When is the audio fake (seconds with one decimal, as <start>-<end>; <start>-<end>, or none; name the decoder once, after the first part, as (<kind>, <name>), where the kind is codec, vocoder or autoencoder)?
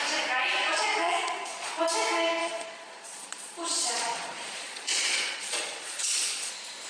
0.6-1.8 (vocoder, Vocos); 2.4-6.5